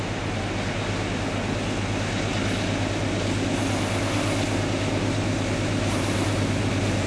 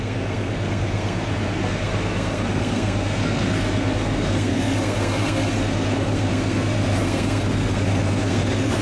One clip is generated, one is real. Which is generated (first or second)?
second